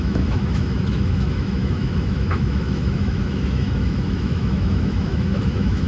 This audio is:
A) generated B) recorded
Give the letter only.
A